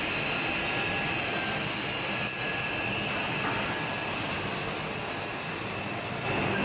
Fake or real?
real